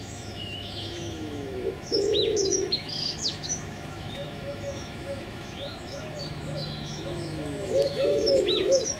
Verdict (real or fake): fake